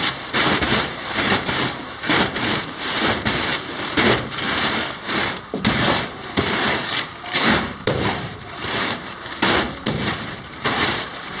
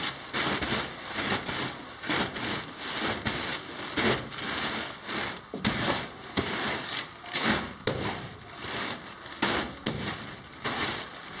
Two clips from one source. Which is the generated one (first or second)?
first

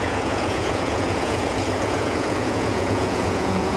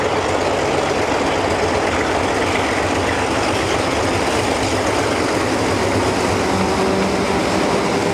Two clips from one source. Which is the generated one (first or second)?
first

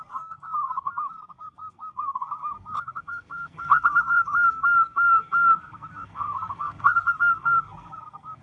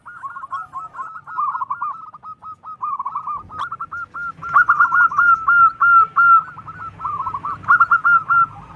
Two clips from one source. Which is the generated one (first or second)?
first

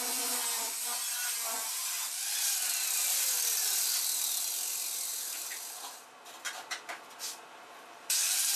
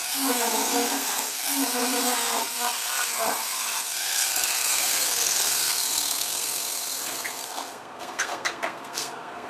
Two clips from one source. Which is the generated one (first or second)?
second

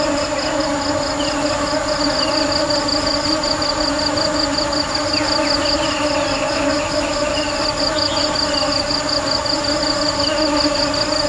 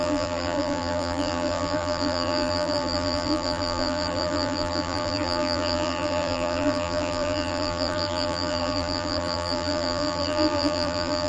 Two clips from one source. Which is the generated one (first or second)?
second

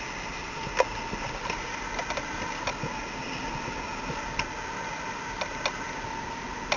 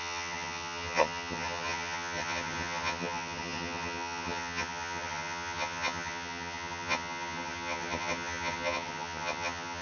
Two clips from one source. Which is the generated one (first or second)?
second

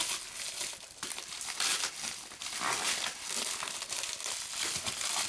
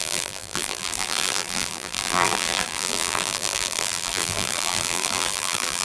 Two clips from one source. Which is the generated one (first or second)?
second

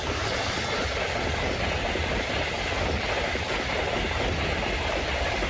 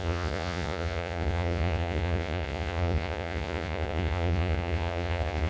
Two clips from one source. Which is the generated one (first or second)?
second